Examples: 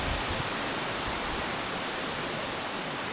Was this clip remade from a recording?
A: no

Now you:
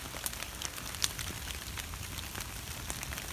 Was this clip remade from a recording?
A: no